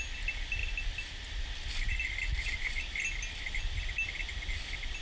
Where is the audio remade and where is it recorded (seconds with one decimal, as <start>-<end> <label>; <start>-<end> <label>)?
0.0-5.0 recorded